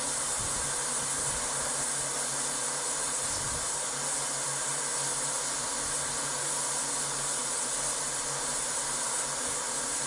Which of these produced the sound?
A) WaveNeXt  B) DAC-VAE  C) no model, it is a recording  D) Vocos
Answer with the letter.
C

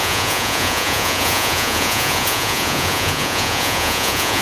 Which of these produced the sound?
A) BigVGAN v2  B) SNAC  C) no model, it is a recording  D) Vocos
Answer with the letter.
D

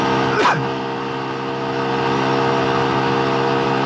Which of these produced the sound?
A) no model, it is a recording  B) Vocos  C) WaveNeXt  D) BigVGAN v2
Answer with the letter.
A